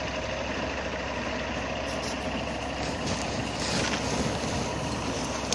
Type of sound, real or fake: real